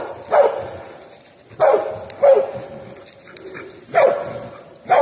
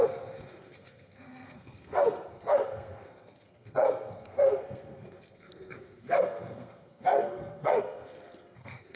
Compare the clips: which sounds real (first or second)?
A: first